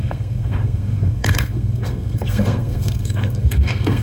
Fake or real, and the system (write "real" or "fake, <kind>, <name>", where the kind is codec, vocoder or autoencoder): fake, codec, SNAC